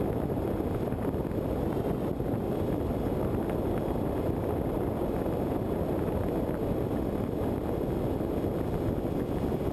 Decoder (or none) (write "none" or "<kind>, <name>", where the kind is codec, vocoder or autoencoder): none